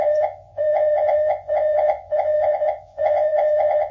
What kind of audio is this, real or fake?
fake